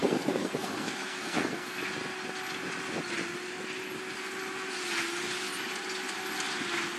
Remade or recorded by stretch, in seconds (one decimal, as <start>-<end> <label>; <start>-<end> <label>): 0.0-1.8 remade; 1.8-7.0 recorded